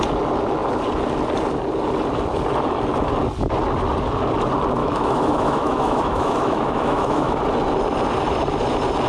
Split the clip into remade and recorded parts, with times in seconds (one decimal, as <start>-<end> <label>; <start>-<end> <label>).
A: 0.0-4.8 recorded; 4.8-7.4 remade; 7.4-9.1 recorded